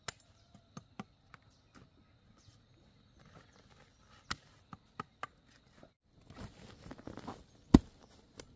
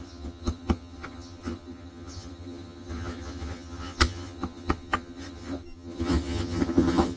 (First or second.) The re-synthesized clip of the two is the second